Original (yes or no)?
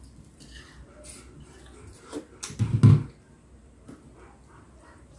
yes